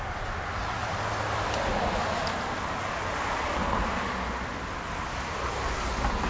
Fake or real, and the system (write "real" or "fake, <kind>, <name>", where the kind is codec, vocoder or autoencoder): real